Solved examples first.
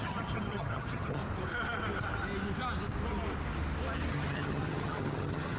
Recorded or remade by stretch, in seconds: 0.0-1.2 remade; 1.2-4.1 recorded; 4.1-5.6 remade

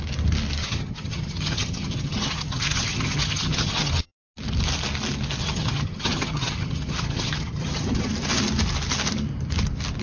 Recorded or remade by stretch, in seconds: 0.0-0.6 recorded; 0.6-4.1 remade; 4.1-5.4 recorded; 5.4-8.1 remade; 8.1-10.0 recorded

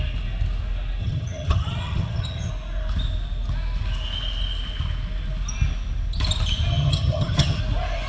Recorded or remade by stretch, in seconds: 0.0-1.0 recorded; 1.0-2.5 remade; 2.5-6.7 recorded; 6.7-7.6 remade; 7.6-8.1 recorded